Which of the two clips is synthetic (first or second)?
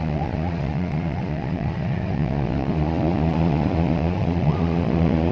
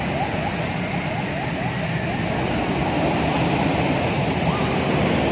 first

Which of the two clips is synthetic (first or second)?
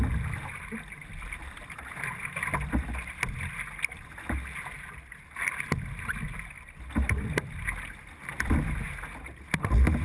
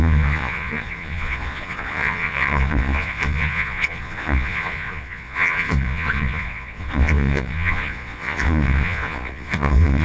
second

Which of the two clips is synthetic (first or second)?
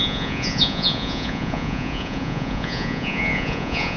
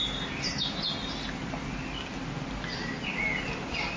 first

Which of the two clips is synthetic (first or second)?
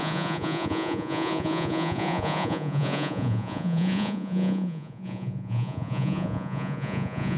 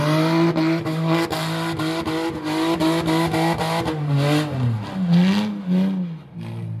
first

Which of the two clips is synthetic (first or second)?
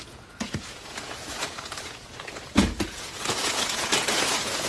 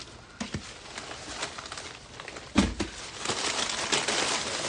first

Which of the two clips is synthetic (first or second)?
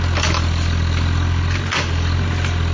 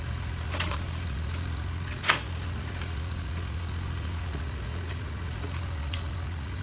second